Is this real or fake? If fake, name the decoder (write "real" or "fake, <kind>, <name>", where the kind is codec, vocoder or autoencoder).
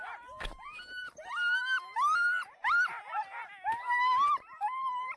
real